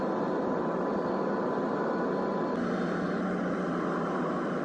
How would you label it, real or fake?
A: real